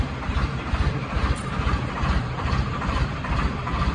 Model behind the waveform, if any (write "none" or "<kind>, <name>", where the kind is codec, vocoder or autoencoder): vocoder, BigVGAN v2